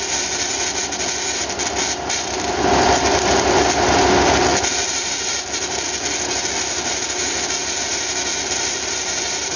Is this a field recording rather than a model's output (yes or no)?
yes